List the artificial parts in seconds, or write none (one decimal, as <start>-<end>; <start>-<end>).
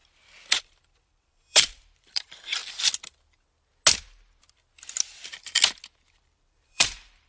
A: 0.6-2.6; 6.1-7.3